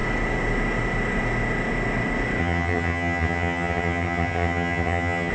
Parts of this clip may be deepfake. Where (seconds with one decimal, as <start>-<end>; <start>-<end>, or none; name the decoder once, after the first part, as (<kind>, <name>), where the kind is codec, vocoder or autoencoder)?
2.4-5.3 (vocoder, HiFi-GAN)